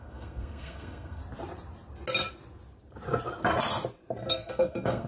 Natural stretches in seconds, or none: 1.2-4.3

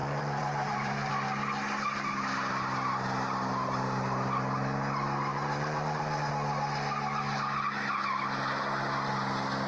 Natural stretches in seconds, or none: 1.1-5.3; 6.3-9.7

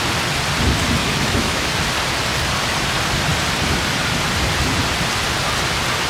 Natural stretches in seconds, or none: 0.0-1.0; 1.7-6.1

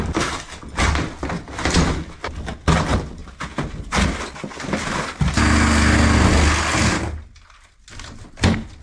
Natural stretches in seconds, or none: 0.0-8.8

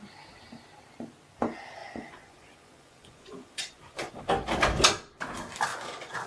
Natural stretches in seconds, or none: 0.0-1.8; 4.2-5.7

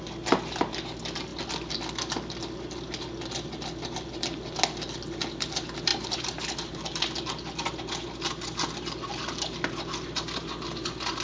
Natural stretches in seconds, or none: 0.0-11.2